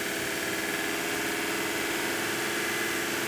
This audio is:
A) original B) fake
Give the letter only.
A